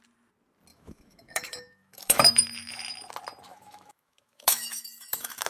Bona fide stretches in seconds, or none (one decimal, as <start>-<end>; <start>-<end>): 0.0-0.7; 3.1-3.5